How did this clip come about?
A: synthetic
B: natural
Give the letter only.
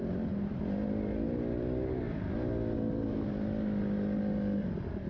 B